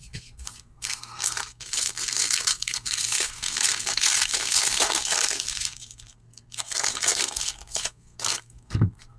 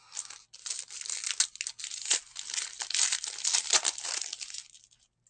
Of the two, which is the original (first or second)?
second